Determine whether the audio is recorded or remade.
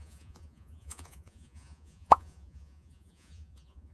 remade